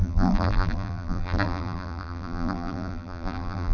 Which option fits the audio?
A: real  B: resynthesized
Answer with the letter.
B